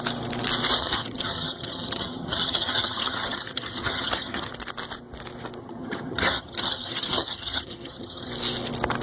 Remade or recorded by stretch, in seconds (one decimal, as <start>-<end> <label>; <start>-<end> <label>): 0.0-0.8 recorded; 0.8-4.5 remade; 4.5-5.6 recorded; 5.6-8.3 remade; 8.3-9.0 recorded